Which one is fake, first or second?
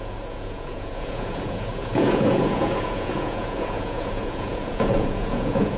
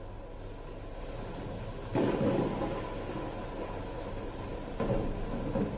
first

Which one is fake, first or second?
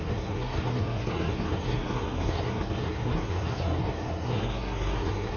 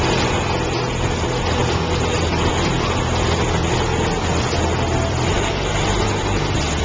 first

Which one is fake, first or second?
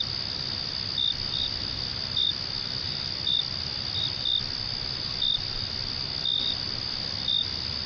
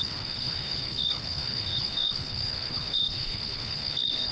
second